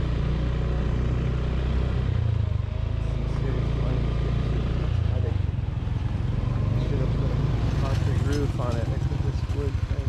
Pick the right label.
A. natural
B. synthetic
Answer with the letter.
A